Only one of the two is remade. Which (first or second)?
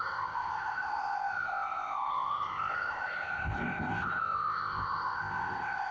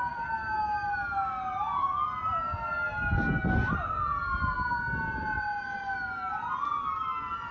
first